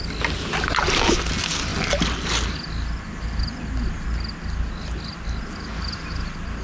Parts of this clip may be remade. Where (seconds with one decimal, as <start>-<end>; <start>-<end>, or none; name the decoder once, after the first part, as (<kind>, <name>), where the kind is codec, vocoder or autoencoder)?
none